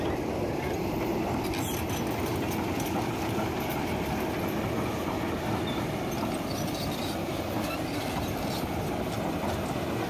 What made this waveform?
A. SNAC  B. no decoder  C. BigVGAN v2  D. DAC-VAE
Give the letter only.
B